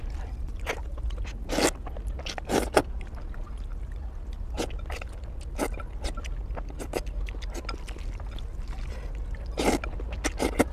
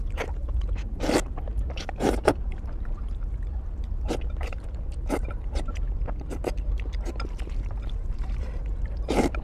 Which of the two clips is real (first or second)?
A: first